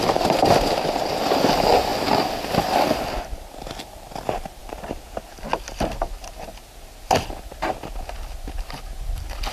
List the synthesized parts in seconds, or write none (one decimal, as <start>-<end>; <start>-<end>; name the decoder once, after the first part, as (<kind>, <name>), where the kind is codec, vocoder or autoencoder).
0.0-4.6 (vocoder, BigVGAN v2); 9.0-9.5